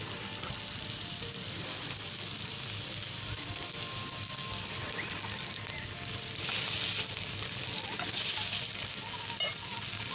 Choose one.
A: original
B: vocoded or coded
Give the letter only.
A